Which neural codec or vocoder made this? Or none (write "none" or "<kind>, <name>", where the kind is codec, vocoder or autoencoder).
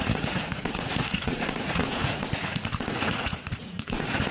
vocoder, Vocos